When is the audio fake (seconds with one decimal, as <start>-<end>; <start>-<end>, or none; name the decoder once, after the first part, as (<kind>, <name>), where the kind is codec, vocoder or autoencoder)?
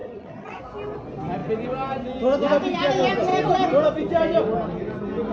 0.0-0.6 (vocoder, HiFi-GAN)